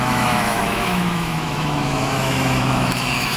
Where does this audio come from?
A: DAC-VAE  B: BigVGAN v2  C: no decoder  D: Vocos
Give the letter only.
A